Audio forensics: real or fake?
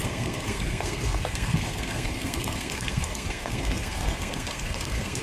fake